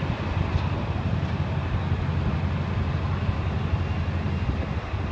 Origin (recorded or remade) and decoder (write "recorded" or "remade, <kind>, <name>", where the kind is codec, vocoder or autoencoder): recorded